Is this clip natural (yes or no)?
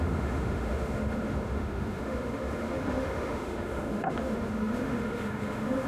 no